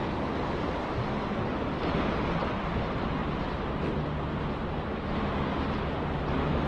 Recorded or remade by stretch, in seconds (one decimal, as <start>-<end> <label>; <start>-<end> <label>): 0.0-6.7 recorded